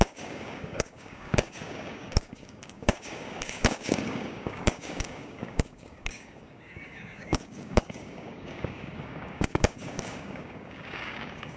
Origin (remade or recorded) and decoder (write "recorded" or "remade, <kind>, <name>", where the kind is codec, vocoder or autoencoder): remade, codec, DAC